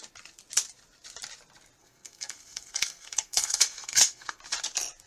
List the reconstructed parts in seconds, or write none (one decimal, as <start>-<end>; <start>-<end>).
1.8-4.4